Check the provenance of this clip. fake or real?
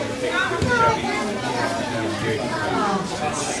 real